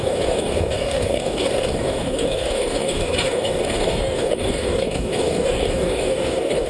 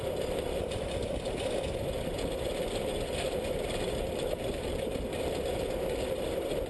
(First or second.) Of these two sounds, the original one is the second